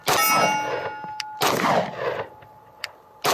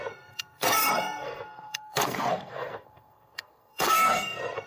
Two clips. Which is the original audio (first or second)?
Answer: first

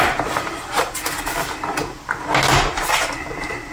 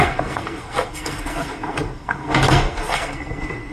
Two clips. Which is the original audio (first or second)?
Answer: first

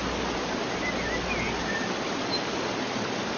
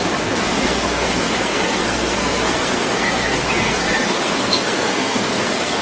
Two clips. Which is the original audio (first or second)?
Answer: first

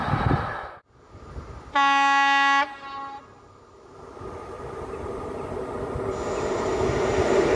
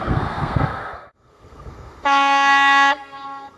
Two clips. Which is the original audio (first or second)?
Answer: first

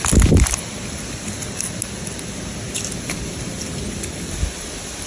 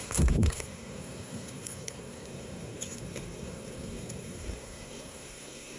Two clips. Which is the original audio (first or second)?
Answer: first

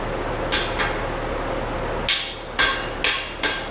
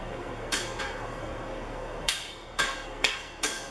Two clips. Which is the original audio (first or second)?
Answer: first